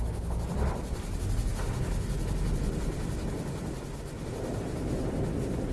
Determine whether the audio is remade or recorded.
recorded